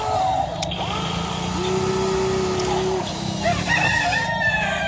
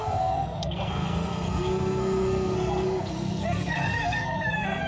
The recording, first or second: first